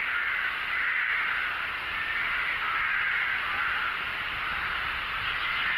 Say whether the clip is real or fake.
real